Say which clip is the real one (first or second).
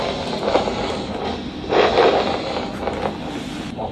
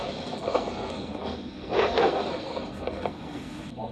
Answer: first